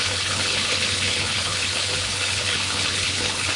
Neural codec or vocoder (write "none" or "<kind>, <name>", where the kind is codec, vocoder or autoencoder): codec, HILCodec